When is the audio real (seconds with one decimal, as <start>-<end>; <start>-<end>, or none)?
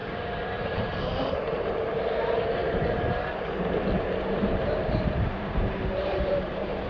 1.7-2.6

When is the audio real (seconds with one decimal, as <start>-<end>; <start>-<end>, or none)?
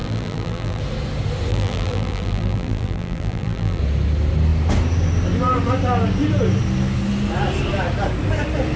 0.8-1.5; 3.8-8.8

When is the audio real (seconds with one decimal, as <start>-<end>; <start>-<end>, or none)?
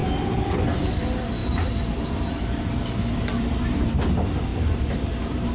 0.0-1.4; 4.0-4.5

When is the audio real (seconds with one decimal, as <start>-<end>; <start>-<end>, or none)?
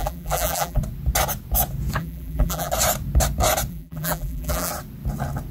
0.8-2.0; 2.7-3.7; 4.7-5.5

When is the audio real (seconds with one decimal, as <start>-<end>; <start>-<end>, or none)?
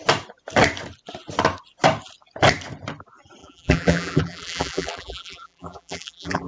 0.0-3.4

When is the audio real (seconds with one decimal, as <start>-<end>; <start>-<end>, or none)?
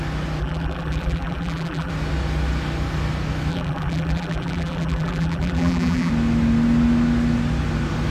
0.0-0.4; 1.9-3.5; 6.1-8.1